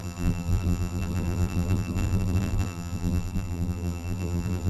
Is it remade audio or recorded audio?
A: remade